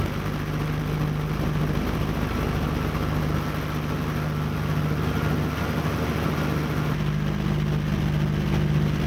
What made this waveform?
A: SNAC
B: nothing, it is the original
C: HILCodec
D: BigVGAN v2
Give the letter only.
B